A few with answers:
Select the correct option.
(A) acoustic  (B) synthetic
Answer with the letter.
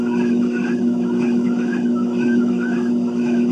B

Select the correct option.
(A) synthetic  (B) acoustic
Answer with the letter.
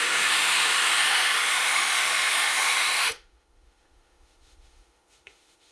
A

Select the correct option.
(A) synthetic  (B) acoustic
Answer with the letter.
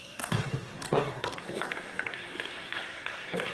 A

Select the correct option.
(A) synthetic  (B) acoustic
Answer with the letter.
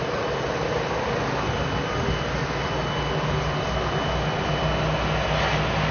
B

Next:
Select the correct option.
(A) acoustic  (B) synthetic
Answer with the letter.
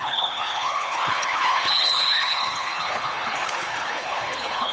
B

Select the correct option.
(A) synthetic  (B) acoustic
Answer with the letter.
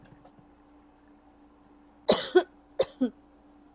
B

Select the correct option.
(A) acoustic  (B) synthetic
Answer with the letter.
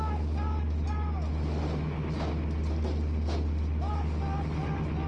A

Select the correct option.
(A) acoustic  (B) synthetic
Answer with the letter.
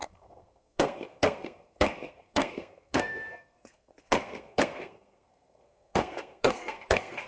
B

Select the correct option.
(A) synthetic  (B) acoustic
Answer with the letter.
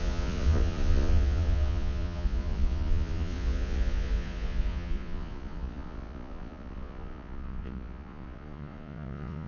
A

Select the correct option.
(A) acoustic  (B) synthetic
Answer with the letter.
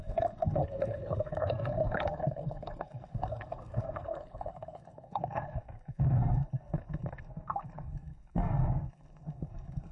B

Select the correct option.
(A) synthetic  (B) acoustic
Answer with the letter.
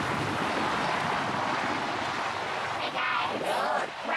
B